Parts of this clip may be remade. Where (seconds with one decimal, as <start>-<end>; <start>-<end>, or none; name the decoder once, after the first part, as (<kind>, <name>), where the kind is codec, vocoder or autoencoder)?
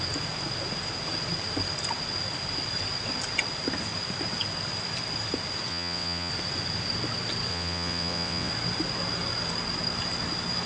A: 5.7-6.3 (vocoder, WaveNeXt); 7.5-8.5